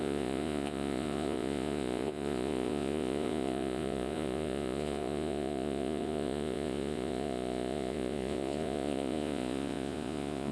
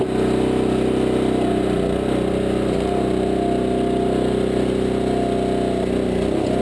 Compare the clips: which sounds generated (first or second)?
first